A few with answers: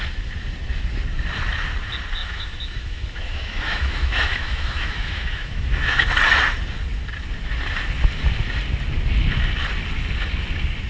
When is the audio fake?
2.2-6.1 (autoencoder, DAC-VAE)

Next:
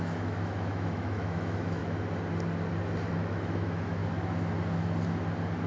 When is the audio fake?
0.0-1.8 (autoencoder, DAC-VAE); 3.1-4.0

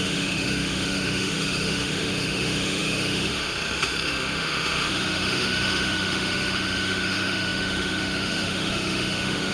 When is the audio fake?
0.0-9.5 (autoencoder, DAC-VAE)

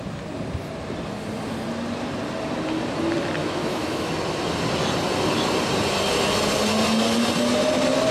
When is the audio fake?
3.4-4.1 (autoencoder, DAC-VAE)